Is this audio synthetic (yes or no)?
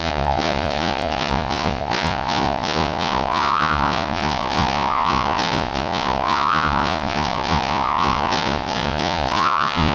yes